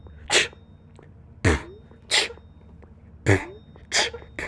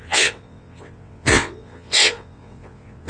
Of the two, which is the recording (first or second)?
first